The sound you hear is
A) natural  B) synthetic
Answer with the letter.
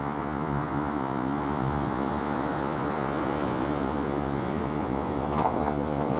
B